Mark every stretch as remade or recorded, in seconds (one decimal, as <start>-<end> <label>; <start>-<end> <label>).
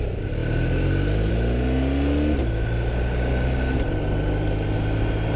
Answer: 0.0-5.4 recorded